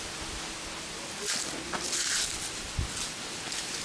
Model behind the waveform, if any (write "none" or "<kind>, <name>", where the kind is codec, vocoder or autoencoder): none